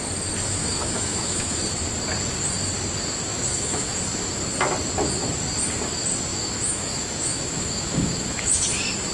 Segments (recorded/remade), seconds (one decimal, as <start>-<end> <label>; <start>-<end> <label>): 0.0-0.6 recorded; 0.6-1.6 remade; 1.6-3.3 recorded; 3.3-4.0 remade; 4.0-6.3 recorded; 6.3-8.6 remade; 8.6-9.1 recorded